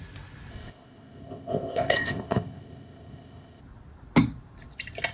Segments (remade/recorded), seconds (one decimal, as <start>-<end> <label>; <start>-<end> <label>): 0.0-0.5 recorded; 0.5-3.6 remade; 3.6-5.1 recorded